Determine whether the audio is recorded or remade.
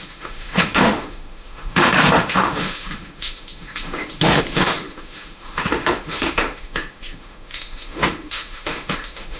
remade